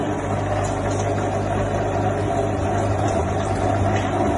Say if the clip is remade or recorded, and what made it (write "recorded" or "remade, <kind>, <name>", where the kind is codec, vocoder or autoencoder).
recorded